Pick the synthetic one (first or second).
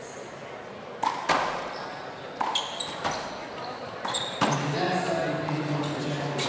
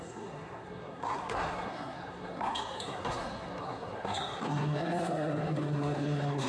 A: second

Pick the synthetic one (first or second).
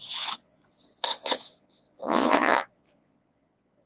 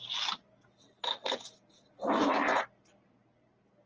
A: first